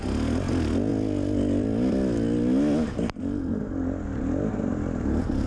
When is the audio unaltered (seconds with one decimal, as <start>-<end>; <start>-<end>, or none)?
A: 0.0-5.5